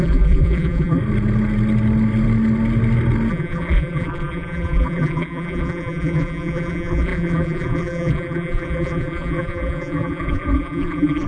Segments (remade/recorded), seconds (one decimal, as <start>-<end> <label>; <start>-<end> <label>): 0.0-1.0 remade; 1.0-3.3 recorded; 3.3-11.3 remade